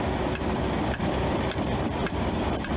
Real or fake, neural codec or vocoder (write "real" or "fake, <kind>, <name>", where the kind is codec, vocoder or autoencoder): fake, vocoder, BigVGAN v2